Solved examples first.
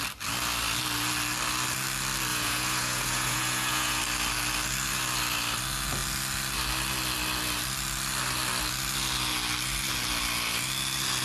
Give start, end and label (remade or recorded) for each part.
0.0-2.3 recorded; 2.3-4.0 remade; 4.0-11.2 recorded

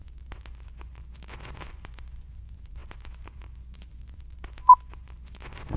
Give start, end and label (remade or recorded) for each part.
0.0-5.8 remade